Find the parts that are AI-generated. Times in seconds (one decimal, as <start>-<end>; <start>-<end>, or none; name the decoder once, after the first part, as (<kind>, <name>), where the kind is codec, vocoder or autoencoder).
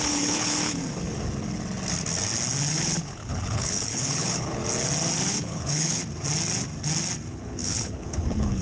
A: 0.0-0.8 (codec, HILCodec); 2.7-4.6; 5.3-6.0; 7.3-8.6